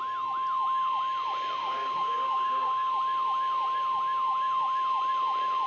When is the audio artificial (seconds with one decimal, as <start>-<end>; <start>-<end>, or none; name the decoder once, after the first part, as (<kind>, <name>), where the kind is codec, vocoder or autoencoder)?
1.6-2.9 (codec, DAC)